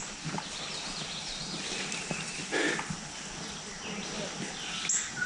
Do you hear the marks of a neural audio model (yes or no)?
no